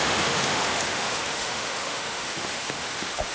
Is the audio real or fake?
fake